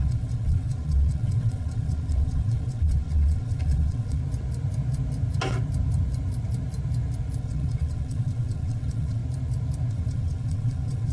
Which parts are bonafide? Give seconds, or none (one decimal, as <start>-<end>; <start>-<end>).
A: 4.2-7.4; 9.2-9.9